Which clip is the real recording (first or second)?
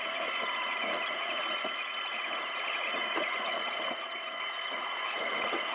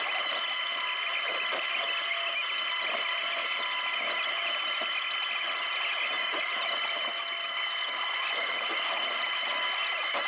second